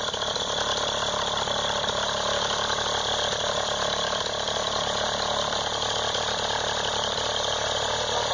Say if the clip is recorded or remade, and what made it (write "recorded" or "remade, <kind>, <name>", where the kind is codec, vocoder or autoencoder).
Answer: recorded